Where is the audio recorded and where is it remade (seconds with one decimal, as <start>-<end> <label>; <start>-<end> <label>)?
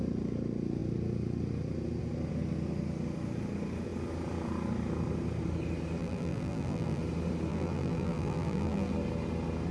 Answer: 0.0-6.0 recorded; 6.0-7.0 remade; 7.0-7.5 recorded; 7.5-8.9 remade; 8.9-9.7 recorded